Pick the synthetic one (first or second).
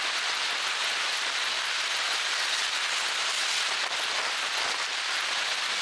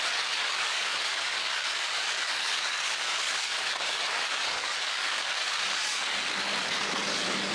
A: second